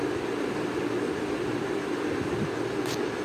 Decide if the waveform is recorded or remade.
recorded